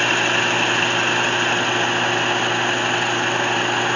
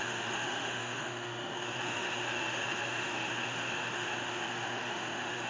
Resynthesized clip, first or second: second